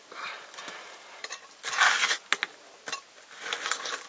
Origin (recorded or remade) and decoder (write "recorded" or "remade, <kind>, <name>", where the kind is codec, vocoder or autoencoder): recorded